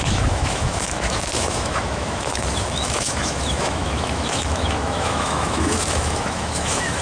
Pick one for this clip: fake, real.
fake